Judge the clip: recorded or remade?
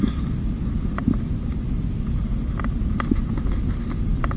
recorded